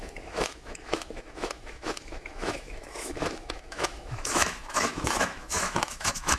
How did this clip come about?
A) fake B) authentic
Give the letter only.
A